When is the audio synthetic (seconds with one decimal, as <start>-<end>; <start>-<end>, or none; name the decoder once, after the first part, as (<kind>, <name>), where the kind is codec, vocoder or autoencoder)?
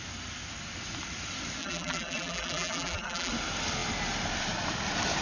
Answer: 1.6-3.3 (vocoder, BigVGAN v2)